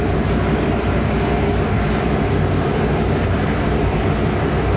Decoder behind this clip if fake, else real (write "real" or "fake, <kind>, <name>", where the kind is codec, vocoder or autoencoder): fake, vocoder, BigVGAN v2